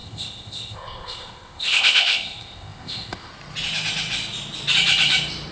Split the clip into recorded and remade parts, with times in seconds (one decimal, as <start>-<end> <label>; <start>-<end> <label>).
0.0-3.3 remade; 3.3-5.5 recorded